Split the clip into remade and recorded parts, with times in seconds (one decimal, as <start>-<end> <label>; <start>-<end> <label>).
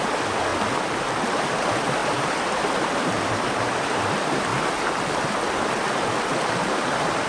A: 0.0-0.5 remade; 0.5-1.2 recorded; 1.2-4.5 remade; 4.5-6.7 recorded; 6.7-7.3 remade